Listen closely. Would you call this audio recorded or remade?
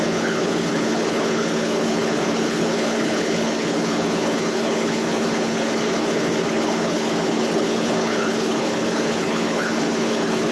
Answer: remade